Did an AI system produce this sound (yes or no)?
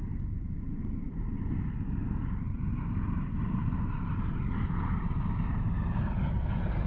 yes